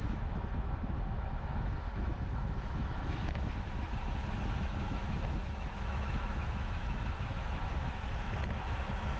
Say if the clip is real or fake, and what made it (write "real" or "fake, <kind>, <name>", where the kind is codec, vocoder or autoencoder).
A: fake, autoencoder, DAC-VAE